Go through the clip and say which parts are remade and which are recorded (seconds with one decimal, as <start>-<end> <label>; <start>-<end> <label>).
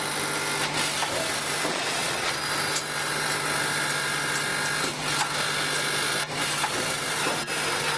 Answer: 0.0-1.7 recorded; 1.7-2.3 remade; 2.3-8.0 recorded